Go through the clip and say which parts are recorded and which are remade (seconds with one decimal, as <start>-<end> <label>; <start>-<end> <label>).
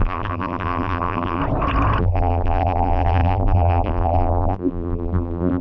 0.0-1.4 remade; 1.4-2.0 recorded; 2.0-5.6 remade